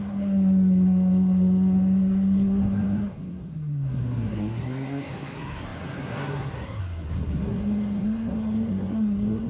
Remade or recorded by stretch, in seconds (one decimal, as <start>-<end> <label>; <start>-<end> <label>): 0.0-9.5 remade

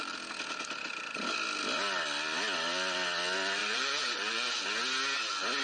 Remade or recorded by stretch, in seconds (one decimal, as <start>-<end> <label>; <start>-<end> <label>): 0.0-3.6 recorded; 3.6-4.6 remade; 4.6-5.6 recorded

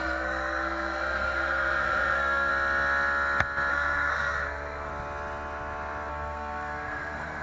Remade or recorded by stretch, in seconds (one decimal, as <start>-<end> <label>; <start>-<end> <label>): 0.0-2.5 remade; 2.5-3.7 recorded; 3.7-4.9 remade; 4.9-6.1 recorded; 6.1-7.4 remade